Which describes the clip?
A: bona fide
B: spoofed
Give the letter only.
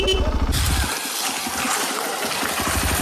A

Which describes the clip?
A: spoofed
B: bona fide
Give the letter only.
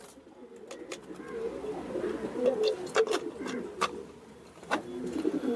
B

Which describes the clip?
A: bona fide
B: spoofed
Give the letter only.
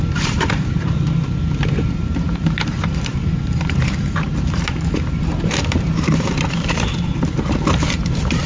B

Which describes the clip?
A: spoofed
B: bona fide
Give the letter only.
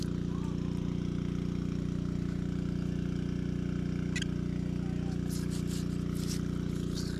B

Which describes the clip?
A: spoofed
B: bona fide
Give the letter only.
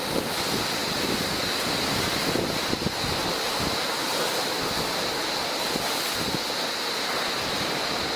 B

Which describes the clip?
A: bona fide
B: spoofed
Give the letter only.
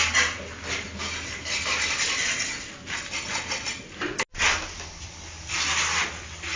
A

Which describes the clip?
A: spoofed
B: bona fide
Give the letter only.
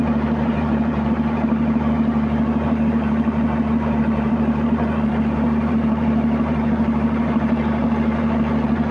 A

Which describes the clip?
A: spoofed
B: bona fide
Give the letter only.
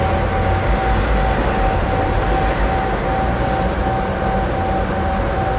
B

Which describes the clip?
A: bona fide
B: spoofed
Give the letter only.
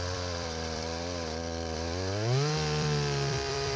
B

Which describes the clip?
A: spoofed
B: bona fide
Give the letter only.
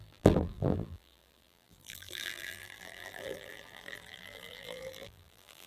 A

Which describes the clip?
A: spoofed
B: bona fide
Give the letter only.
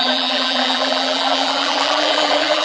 A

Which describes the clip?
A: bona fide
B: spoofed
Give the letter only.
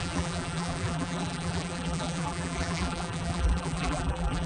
B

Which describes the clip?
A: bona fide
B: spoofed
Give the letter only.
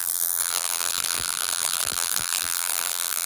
B